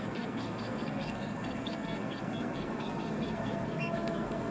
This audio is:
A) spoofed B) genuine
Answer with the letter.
A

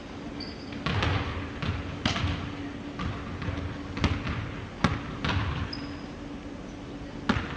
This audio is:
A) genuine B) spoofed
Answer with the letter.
A